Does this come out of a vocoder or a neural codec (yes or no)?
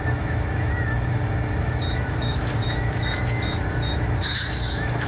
yes